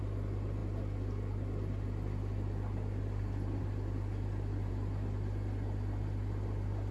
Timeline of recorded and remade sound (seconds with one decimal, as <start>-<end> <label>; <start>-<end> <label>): 0.0-6.9 recorded